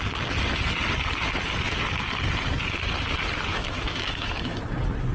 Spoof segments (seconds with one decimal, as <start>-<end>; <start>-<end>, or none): 3.5-4.6